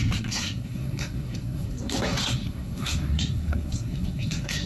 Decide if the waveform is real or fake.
fake